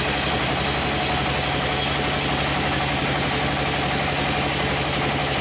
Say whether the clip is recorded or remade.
recorded